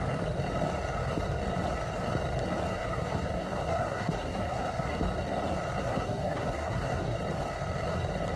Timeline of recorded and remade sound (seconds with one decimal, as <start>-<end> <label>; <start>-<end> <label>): 0.0-2.7 recorded; 2.7-5.0 remade; 5.0-5.8 recorded; 5.8-7.2 remade; 7.2-8.4 recorded